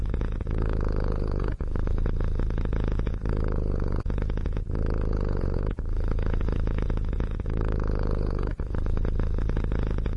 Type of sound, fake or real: fake